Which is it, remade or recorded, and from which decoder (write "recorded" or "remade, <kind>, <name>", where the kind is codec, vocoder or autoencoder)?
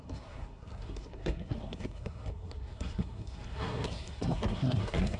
remade, codec, SNAC